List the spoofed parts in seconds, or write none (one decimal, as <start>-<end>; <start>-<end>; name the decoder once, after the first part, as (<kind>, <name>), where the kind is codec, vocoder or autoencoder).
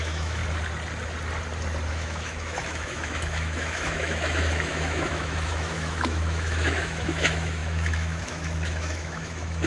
0.0-0.4 (autoencoder, DAC-VAE); 1.9-9.7